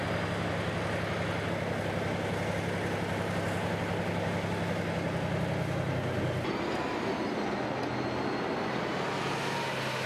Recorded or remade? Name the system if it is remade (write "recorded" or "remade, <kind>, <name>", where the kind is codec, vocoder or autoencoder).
recorded